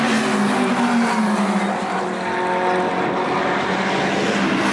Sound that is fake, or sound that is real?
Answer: real